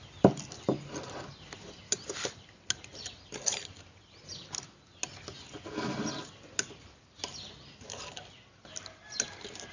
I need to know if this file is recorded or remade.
recorded